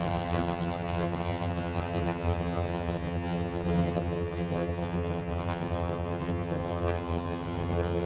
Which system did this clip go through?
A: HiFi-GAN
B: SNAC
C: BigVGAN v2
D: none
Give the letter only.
A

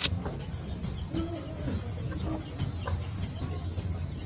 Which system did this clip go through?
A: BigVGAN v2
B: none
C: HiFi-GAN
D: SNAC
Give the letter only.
B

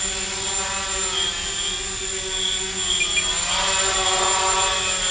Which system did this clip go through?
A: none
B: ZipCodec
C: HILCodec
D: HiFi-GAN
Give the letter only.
A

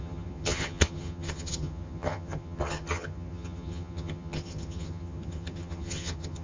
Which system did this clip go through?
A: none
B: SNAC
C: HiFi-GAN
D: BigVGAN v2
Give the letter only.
C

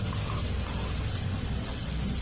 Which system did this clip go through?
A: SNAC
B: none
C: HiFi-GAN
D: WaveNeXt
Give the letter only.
B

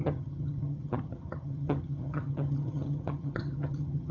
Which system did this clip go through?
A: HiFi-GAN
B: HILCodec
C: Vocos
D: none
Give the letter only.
A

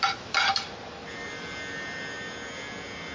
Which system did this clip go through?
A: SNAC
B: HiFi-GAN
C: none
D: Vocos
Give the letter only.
C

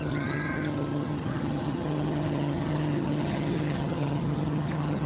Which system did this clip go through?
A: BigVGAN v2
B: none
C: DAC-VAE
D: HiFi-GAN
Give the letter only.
D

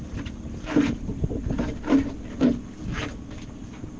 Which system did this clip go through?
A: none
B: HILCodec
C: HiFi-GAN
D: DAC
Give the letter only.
A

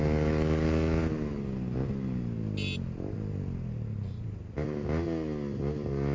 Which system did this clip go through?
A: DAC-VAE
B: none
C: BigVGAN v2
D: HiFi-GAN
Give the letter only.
B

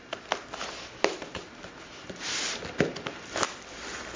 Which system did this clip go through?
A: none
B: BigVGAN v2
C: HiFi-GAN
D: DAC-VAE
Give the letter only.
A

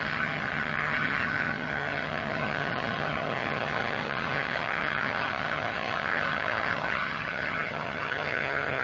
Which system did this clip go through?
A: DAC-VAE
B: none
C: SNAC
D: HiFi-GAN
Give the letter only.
D